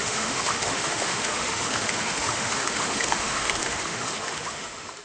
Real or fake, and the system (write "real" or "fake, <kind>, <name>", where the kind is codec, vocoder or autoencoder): fake, autoencoder, DAC-VAE